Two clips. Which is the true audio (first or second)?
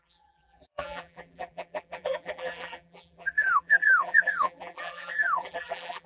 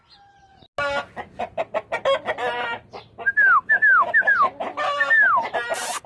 second